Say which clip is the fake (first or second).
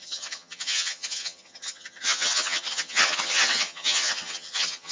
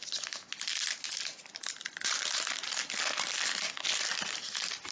first